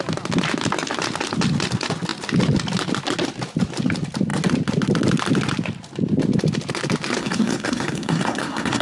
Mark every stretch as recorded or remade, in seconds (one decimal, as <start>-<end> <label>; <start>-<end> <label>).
0.0-7.2 recorded; 7.2-8.8 remade